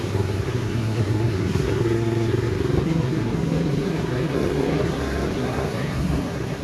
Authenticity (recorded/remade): remade